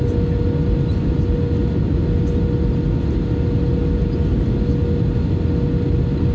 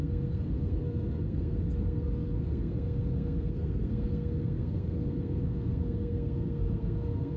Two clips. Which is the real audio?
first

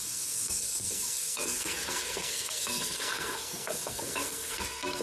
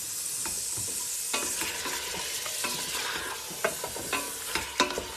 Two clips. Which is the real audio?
second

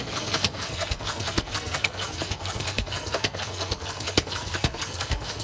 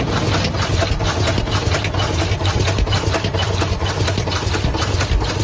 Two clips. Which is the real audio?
second